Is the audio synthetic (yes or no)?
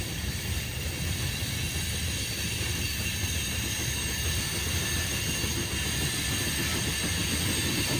no